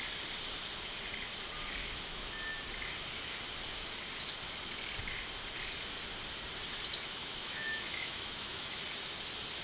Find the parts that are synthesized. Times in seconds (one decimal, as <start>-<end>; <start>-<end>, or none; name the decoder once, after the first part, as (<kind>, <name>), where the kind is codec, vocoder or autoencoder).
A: 1.8-2.3 (autoencoder, DAC-VAE); 7.2-8.8

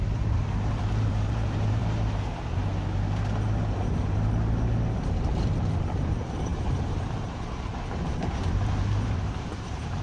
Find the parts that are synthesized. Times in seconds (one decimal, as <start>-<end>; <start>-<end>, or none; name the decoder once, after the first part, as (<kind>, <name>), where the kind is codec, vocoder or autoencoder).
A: 0.0-1.8 (vocoder, BigVGAN v2); 5.1-10.0

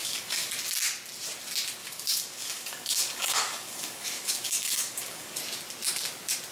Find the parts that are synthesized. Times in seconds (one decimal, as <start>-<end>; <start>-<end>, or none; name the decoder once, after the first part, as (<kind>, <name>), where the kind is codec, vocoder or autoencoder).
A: 0.0-0.5 (codec, DAC); 1.8-5.4

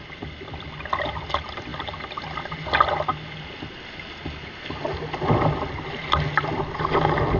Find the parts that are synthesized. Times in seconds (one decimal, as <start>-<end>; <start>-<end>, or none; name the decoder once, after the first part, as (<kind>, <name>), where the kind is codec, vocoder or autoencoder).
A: none

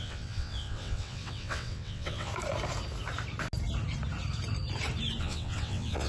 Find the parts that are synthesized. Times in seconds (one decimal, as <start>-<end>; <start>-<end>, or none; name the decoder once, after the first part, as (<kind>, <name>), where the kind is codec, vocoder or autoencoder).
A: 0.0-2.3 (vocoder, WaveNeXt); 5.2-6.1

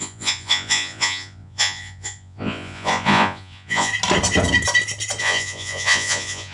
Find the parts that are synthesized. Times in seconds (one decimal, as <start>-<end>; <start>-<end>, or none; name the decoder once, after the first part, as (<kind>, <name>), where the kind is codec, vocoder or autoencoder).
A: 0.0-3.9 (vocoder, Vocos); 5.2-6.5

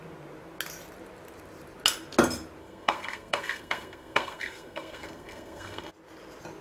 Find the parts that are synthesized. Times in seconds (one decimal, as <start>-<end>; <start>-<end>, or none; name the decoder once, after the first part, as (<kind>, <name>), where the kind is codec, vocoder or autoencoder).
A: 2.6-5.9 (codec, SNAC)